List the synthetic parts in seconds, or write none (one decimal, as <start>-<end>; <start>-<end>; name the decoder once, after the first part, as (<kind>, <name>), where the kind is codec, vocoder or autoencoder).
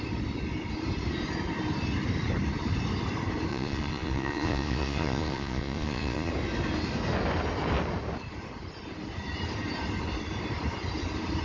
3.5-6.3 (vocoder, Vocos)